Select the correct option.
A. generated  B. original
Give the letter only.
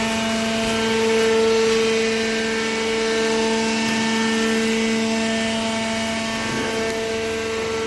B